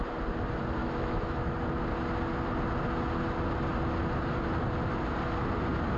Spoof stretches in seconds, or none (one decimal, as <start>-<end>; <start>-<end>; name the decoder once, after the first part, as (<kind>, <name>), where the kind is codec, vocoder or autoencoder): 0.8-1.5 (autoencoder, DAC-VAE)